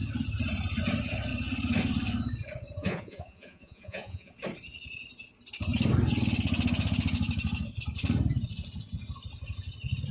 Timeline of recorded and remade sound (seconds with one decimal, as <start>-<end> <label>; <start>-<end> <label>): 0.0-2.8 recorded; 2.8-4.3 remade; 4.3-10.1 recorded